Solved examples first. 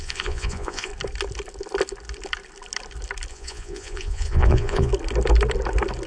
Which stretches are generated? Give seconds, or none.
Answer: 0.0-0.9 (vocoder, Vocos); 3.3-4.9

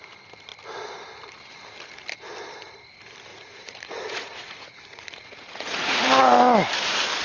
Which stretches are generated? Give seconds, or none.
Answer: 3.3-6.0 (vocoder, Vocos)

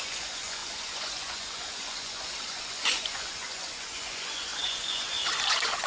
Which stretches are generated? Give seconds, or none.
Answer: 0.0-5.9 (vocoder, Vocos)

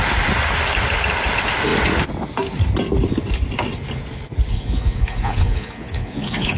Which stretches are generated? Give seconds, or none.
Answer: 4.5-6.6 (vocoder, Vocos)

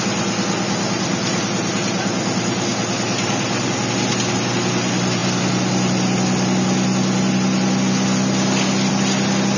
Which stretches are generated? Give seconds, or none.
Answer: none

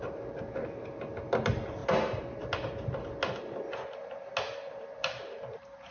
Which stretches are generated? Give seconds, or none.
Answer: none

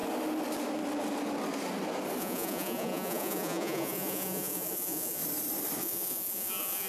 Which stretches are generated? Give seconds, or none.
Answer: 2.2-5.2 (vocoder, Vocos); 5.8-6.9

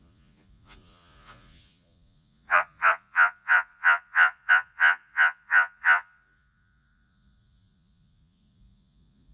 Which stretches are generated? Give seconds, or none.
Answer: 0.0-9.3 (vocoder, Vocos)